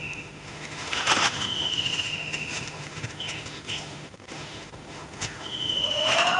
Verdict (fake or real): fake